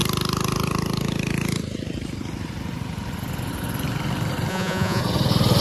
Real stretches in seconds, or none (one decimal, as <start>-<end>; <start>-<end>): 0.0-4.5; 5.0-5.6